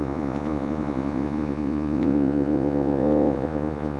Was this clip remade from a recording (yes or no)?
yes